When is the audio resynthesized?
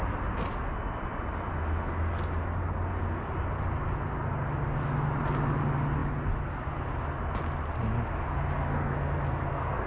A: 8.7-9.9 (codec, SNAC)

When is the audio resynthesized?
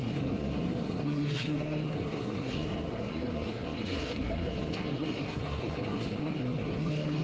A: 0.0-7.2 (codec, SNAC)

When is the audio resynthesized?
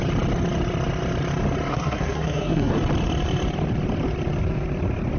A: 1.7-2.7 (codec, SNAC)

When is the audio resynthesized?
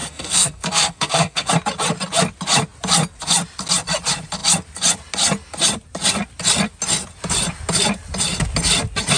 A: 0.0-1.5 (codec, SNAC)